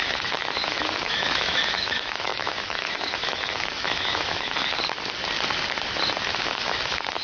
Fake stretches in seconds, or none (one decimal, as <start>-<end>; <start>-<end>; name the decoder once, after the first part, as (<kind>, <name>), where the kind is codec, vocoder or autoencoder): 0.0-4.6 (autoencoder, DAC-VAE); 6.3-7.2